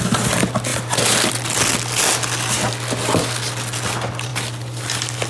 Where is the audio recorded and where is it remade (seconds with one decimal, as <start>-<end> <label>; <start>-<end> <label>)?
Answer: 0.0-5.3 recorded